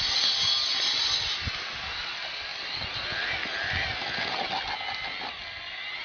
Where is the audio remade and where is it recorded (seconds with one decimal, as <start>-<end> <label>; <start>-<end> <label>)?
0.0-6.0 recorded